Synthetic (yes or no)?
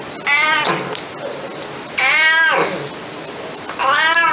no